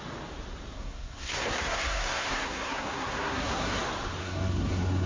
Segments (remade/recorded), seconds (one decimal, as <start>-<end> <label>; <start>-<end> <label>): 0.0-0.7 recorded; 0.7-3.8 remade; 3.8-4.2 recorded; 4.2-5.1 remade